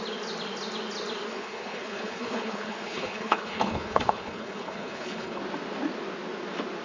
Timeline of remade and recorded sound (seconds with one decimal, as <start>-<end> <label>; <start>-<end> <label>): 0.0-1.3 recorded; 1.3-5.4 remade; 5.4-6.8 recorded